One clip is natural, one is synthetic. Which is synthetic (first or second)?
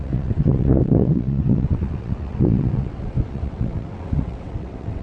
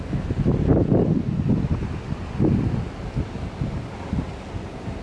first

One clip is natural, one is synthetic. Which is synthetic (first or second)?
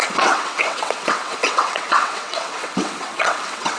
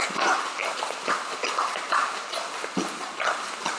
first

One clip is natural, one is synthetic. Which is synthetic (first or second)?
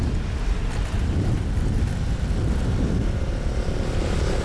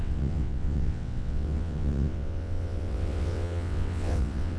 second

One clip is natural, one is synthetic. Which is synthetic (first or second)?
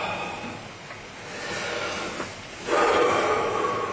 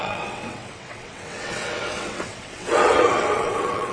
second